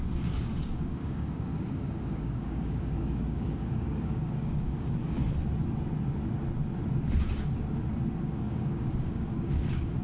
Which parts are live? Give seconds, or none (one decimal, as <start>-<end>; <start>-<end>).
5.2-8.2